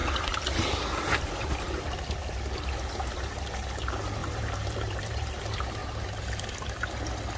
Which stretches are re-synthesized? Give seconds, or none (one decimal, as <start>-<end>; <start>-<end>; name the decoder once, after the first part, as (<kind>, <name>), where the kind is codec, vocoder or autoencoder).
0.0-0.8 (vocoder, BigVGAN v2); 4.2-5.3; 5.8-6.4